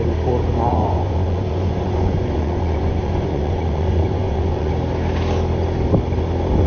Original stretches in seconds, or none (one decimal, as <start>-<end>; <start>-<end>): 0.0-0.7; 4.7-6.7